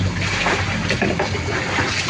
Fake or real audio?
real